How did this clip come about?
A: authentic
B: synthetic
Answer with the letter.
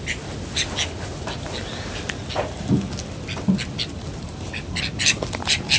A